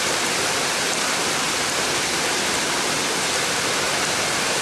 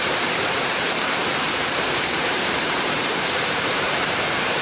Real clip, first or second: first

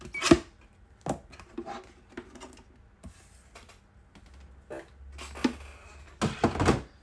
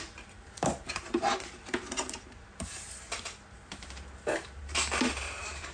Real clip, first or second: first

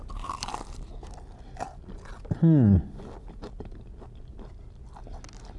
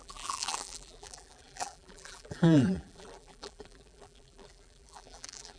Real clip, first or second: first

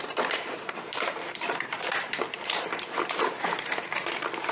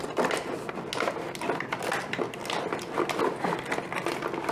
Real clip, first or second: second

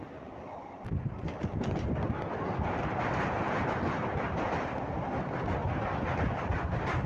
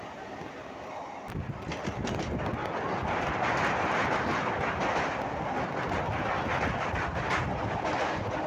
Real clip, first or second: second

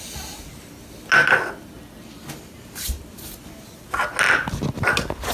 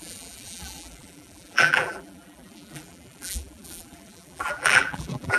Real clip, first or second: first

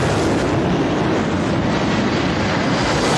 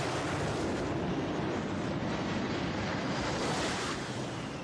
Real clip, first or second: first